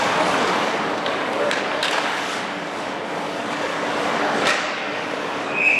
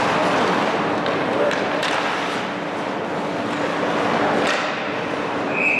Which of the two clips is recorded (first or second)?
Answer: second